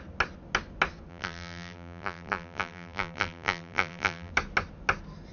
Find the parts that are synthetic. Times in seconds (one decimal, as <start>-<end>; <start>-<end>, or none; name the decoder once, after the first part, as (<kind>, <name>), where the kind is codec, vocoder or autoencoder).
1.1-4.3 (vocoder, BigVGAN v2)